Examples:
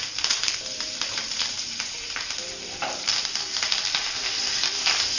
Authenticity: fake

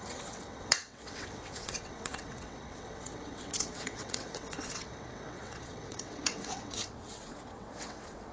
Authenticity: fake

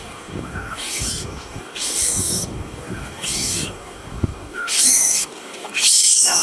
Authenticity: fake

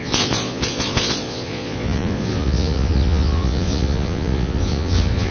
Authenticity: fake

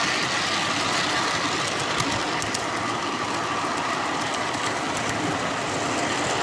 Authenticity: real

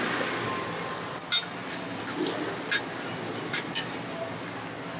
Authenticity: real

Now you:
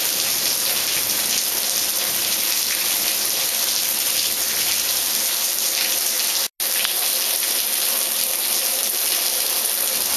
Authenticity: real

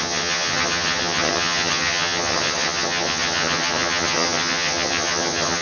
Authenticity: fake